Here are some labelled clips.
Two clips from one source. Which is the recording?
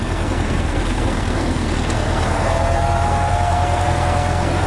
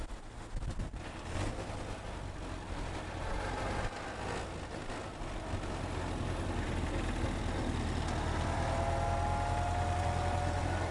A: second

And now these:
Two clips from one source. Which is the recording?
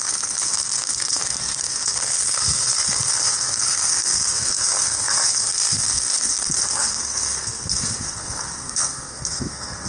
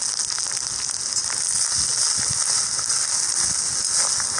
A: second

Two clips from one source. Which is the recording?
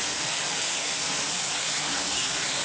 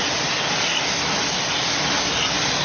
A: second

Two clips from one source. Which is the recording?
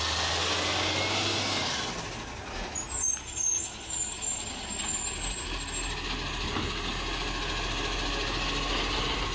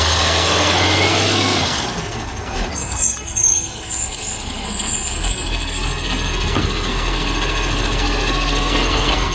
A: first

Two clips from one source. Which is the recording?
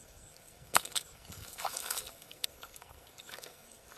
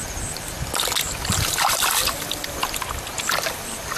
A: second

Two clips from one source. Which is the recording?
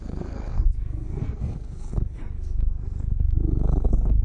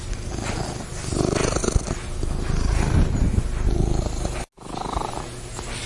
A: second